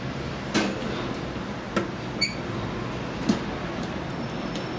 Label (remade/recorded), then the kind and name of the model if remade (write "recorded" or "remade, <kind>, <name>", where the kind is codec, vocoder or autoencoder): recorded